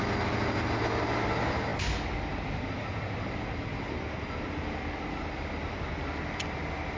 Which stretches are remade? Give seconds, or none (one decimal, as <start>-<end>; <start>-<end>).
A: none